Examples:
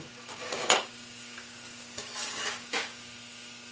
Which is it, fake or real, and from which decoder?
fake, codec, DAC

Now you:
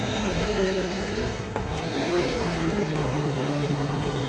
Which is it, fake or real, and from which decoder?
fake, codec, SNAC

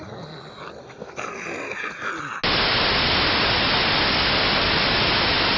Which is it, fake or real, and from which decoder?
real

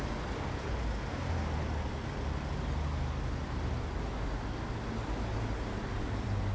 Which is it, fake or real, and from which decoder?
real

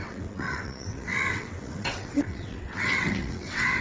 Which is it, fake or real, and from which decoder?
fake, vocoder, WaveNeXt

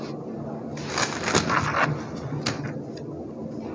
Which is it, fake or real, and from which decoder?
real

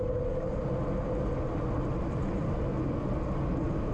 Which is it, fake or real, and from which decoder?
real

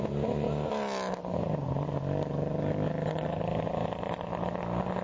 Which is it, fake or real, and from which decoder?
real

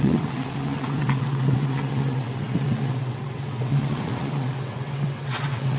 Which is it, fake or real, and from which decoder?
fake, vocoder, WaveNeXt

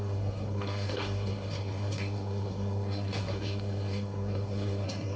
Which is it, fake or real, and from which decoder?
fake, codec, SNAC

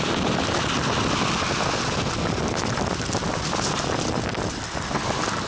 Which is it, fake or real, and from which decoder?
real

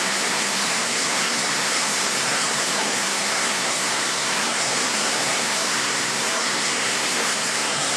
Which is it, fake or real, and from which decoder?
fake, codec, SNAC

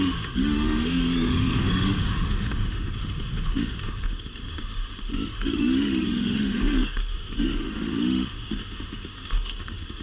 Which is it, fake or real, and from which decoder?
fake, autoencoder, DAC-VAE